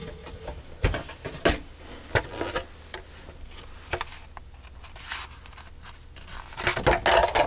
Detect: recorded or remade recorded